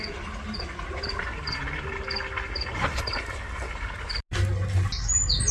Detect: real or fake real